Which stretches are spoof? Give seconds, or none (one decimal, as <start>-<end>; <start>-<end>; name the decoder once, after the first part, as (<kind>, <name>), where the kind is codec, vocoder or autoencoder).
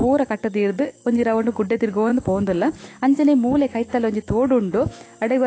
0.0-5.5 (autoencoder, DAC-VAE)